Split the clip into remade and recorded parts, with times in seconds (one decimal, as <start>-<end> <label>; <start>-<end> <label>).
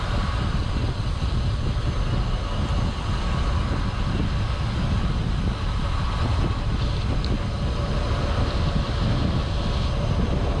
0.0-10.6 recorded